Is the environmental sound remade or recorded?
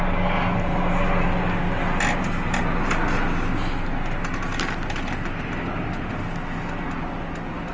recorded